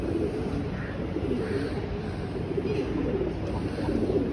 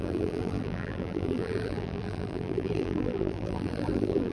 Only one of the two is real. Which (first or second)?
first